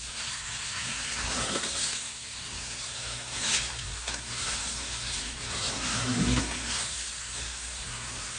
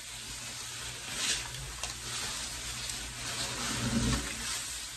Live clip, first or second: second